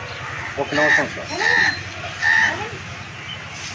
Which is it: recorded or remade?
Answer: recorded